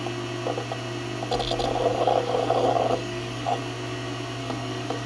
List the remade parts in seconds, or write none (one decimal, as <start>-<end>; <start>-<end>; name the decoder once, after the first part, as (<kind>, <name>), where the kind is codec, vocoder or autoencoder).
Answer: 1.9-3.6 (codec, DAC); 4.4-5.1